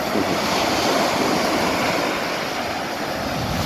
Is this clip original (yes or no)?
yes